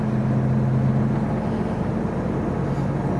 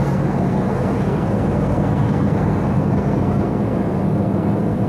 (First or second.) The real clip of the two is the first